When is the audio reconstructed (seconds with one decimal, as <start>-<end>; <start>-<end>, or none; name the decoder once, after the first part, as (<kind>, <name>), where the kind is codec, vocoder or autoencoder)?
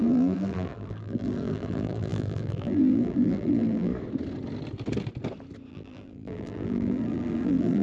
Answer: 0.0-3.9 (vocoder, BigVGAN v2); 5.7-7.8